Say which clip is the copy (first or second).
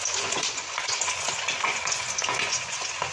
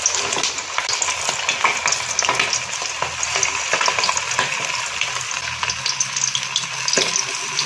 first